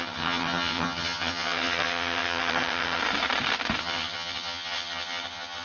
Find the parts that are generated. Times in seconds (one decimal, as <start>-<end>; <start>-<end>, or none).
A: 0.0-3.0; 3.8-5.6